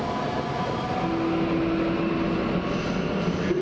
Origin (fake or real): real